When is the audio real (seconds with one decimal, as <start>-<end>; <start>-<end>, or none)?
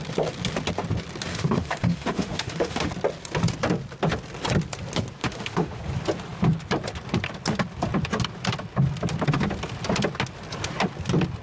0.0-1.3; 2.9-5.2; 5.8-11.4